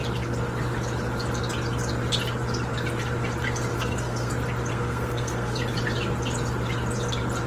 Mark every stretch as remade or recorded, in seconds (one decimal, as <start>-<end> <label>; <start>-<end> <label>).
0.0-3.7 recorded; 3.7-4.3 remade; 4.3-4.7 recorded; 4.7-5.6 remade; 5.6-7.5 recorded